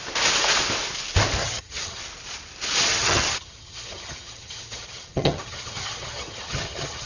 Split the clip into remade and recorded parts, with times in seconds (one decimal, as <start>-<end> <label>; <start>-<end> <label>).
0.0-1.4 recorded; 1.4-2.0 remade; 2.0-2.9 recorded; 2.9-7.1 remade